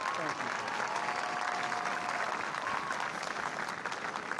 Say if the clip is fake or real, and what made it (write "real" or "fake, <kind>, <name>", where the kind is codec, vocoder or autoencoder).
real